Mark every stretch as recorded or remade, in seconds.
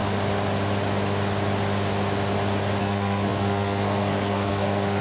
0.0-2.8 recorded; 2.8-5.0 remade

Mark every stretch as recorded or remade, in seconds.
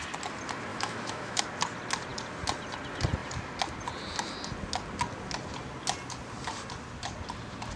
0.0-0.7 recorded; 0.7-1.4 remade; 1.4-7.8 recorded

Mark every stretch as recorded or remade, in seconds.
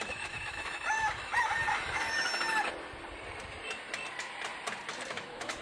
0.0-1.3 remade; 1.3-1.9 recorded; 1.9-2.3 remade; 2.3-5.1 recorded; 5.1-5.6 remade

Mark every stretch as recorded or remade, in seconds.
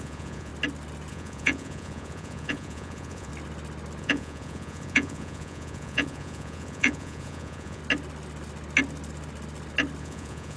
0.0-0.5 remade; 0.5-1.1 recorded; 1.1-3.3 remade; 3.3-4.0 recorded; 4.0-7.8 remade; 7.8-10.0 recorded; 10.0-10.6 remade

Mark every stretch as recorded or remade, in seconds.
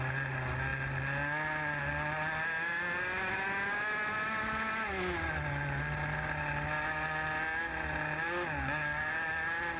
0.0-9.8 recorded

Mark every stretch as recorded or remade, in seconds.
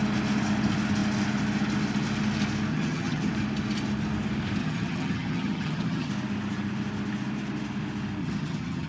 0.0-2.7 recorded; 2.7-3.3 remade; 3.3-4.6 recorded; 4.6-6.1 remade; 6.1-8.2 recorded; 8.2-8.9 remade